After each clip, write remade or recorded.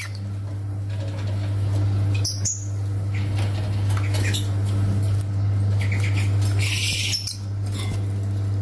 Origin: recorded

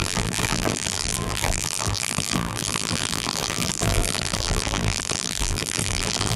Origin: remade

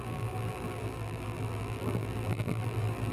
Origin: remade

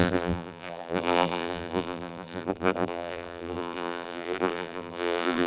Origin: remade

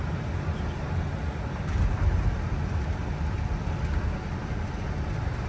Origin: recorded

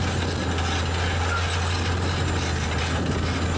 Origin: recorded